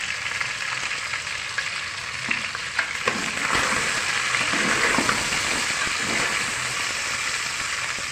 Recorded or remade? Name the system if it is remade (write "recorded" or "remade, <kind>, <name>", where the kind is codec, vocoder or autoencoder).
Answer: recorded